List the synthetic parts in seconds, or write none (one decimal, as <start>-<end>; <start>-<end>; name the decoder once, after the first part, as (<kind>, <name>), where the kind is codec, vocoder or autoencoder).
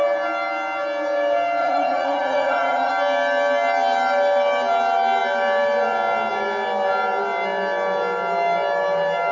1.6-2.9 (vocoder, Vocos)